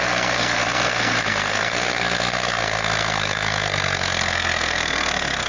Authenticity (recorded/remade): remade